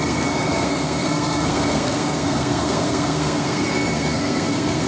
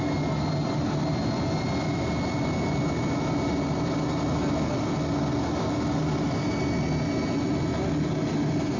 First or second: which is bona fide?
second